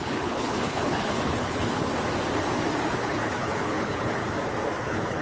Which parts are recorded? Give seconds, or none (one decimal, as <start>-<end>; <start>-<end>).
1.9-2.9; 4.2-4.8